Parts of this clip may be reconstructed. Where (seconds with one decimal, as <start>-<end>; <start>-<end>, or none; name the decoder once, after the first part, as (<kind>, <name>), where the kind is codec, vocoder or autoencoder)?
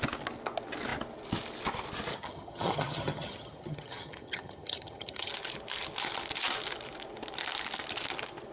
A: 2.1-5.3 (vocoder, HiFi-GAN)